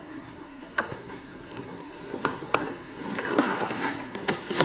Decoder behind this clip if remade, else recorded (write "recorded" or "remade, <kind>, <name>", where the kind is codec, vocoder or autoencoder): remade, codec, SNAC